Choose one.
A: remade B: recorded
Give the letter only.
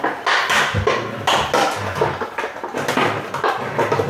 B